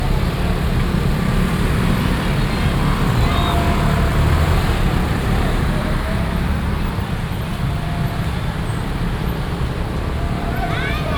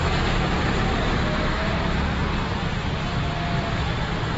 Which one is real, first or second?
second